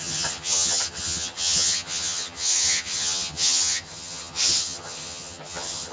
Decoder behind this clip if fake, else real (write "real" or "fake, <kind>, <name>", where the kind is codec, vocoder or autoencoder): fake, vocoder, HiFi-GAN